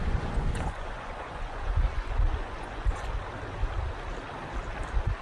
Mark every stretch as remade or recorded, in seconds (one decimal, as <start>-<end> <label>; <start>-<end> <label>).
0.0-3.1 remade; 3.1-5.2 recorded